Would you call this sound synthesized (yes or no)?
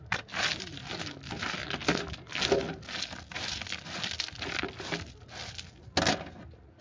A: no